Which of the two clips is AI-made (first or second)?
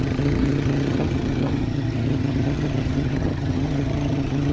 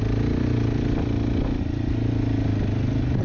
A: first